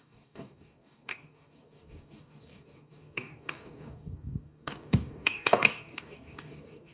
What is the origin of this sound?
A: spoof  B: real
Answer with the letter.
A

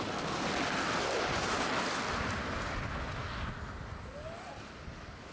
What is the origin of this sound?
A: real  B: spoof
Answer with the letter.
A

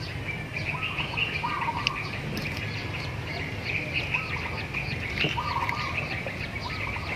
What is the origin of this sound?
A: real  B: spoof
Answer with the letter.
A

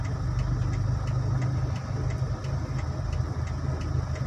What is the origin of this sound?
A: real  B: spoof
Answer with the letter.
A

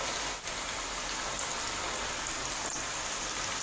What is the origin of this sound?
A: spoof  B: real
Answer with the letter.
B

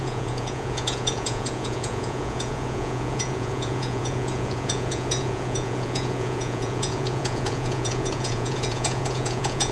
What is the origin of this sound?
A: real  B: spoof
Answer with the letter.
B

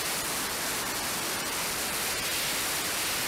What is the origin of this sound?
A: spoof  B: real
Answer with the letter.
B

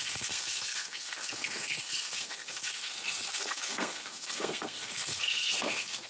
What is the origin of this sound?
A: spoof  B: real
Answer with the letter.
A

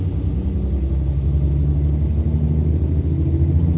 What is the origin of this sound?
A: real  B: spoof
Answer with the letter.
A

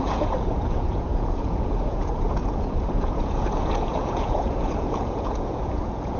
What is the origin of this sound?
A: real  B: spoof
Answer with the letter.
B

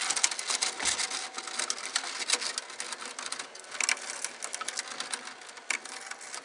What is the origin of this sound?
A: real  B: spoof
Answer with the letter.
A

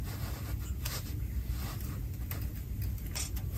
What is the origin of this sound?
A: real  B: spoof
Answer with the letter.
A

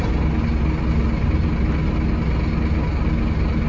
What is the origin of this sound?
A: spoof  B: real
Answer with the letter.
B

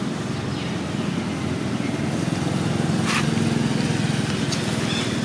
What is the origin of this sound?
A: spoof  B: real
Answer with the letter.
B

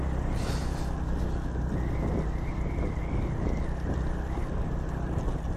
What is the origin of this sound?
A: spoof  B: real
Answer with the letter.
B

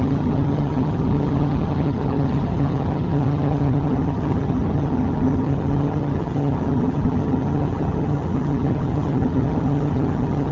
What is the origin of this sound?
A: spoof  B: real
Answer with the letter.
A